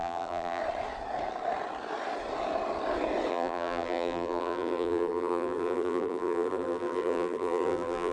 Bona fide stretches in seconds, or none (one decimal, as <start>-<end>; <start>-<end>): 0.6-3.3